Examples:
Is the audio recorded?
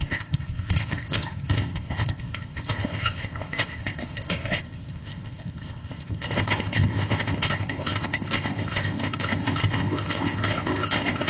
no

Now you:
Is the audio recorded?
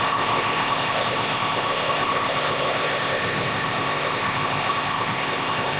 no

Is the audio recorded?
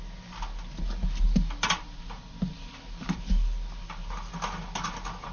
yes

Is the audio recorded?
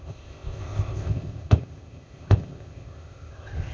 no